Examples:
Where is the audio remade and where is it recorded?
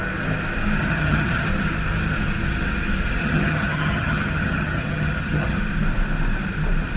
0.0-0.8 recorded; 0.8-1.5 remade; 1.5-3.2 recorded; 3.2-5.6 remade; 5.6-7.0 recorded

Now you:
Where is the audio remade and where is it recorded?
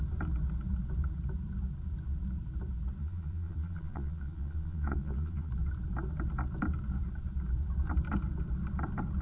0.0-3.0 recorded; 3.0-5.5 remade; 5.5-9.2 recorded